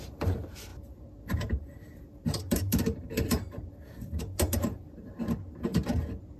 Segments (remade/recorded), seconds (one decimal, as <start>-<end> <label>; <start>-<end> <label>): 0.0-6.4 remade